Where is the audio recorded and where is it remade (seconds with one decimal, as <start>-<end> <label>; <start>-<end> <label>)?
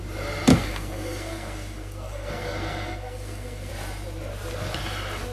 0.0-0.5 recorded; 0.5-3.7 remade; 3.7-5.3 recorded